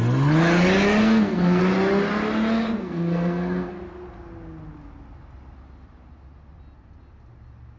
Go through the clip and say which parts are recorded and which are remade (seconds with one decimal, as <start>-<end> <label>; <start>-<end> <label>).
0.0-1.0 recorded; 1.0-1.6 remade; 1.6-2.8 recorded; 2.8-3.7 remade; 3.7-7.8 recorded